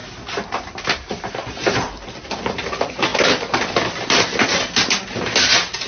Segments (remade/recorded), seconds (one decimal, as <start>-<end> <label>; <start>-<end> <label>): 0.0-5.9 recorded